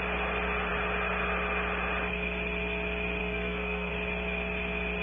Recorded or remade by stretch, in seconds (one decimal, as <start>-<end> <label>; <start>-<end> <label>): 0.0-3.2 recorded; 3.2-3.9 remade; 3.9-5.0 recorded